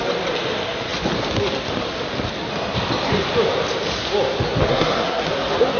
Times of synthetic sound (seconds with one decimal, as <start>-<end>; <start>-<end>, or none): 4.7-5.3